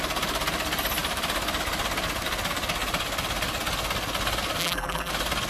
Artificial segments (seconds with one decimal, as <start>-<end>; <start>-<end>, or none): 4.6-5.1